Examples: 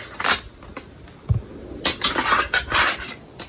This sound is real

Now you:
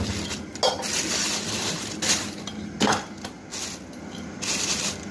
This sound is real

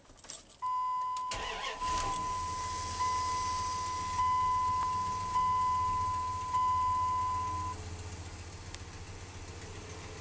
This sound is real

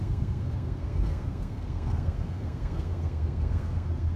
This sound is fake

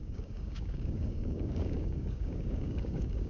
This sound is fake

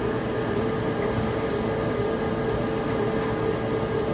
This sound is real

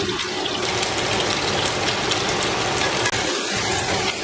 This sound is real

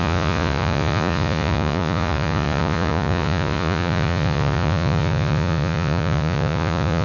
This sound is fake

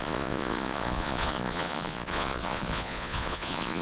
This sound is fake